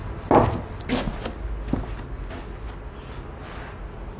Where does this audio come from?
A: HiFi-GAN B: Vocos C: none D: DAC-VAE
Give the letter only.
C